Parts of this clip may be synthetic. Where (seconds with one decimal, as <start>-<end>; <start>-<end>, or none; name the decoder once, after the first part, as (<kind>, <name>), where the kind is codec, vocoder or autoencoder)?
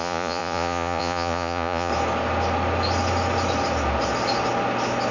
0.0-1.9 (vocoder, Vocos)